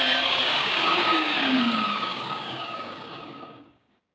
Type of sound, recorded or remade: remade